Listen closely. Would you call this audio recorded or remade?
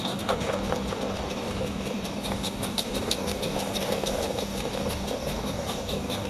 remade